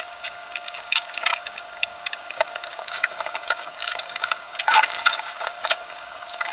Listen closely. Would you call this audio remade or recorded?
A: remade